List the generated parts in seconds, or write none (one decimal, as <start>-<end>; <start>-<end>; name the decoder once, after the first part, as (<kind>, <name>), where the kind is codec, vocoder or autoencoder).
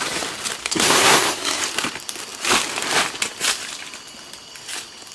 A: 0.6-1.6 (codec, SNAC)